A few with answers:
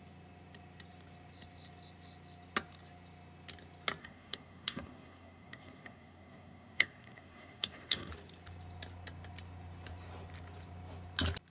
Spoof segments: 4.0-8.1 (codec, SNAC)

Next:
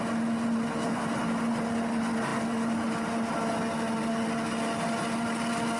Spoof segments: none

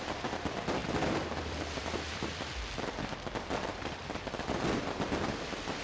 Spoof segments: 0.0-5.8 (vocoder, BigVGAN v2)

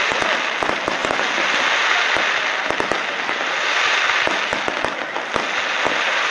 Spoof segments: none

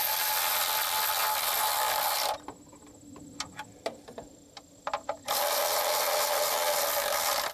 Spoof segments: none

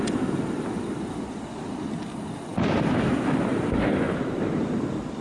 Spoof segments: none

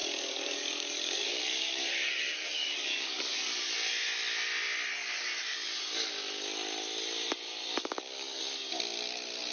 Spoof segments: 0.0-3.7 (codec, DAC); 5.5-6.1; 7.8-8.4

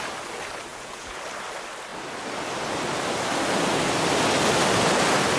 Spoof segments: 0.7-1.2 (vocoder, Vocos)